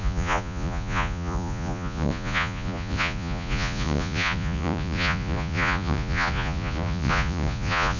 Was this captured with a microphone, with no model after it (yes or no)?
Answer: no